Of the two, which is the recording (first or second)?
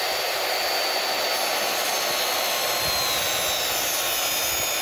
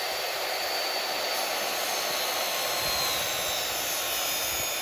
first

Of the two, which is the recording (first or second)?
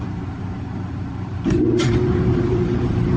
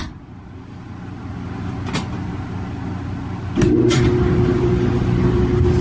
second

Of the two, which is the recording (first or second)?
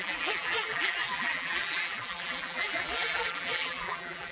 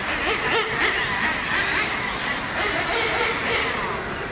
second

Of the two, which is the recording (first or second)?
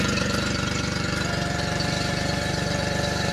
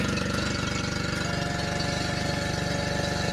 second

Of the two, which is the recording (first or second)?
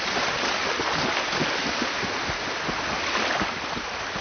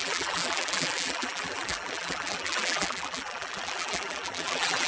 first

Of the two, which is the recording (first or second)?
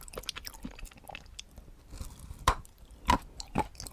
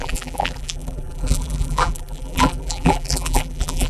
first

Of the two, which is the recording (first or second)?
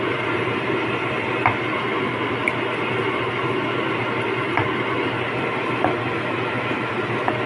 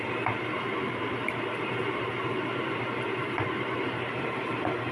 first